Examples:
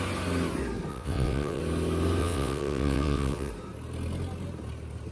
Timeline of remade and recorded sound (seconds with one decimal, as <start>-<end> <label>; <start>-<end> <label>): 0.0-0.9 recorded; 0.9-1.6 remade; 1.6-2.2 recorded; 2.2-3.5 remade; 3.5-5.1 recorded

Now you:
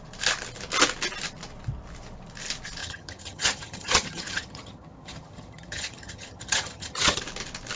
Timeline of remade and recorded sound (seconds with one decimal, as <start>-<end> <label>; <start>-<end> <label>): 0.0-2.8 recorded; 2.8-7.2 remade; 7.2-7.8 recorded

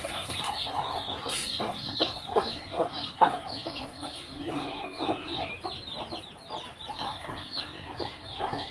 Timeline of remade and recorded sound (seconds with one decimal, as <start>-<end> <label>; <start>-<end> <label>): 0.0-5.5 remade; 5.5-6.9 recorded; 6.9-8.7 remade

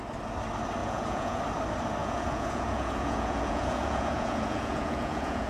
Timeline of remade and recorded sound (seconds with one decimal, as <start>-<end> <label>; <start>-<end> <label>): 0.0-0.8 recorded; 0.8-1.4 remade; 1.4-2.0 recorded; 2.0-5.5 remade

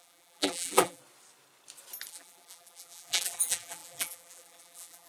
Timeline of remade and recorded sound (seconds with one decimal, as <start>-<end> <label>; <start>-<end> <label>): 0.0-1.0 remade; 1.0-2.1 recorded; 2.1-5.1 remade

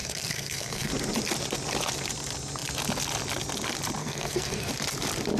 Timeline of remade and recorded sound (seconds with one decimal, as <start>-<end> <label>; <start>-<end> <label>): 0.0-0.9 remade; 0.9-4.0 recorded; 4.0-4.7 remade; 4.7-5.4 recorded

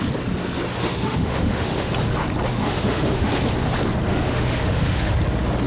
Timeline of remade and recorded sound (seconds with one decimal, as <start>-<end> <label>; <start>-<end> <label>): 0.0-0.8 recorded; 0.8-1.9 remade; 1.9-2.5 recorded; 2.5-3.3 remade; 3.3-4.1 recorded; 4.1-5.1 remade; 5.1-5.7 recorded